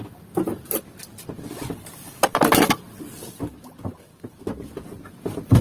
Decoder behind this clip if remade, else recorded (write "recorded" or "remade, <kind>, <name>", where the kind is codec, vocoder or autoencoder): recorded